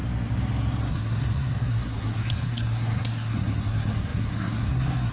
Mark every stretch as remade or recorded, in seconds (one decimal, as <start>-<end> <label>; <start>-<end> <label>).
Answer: 0.0-0.9 recorded; 0.9-5.1 remade